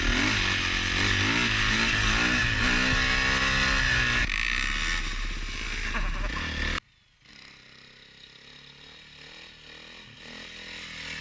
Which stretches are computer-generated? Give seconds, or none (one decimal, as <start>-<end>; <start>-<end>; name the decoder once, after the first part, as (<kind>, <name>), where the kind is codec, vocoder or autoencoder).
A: none